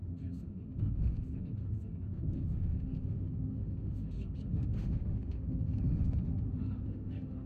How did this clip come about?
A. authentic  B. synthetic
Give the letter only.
B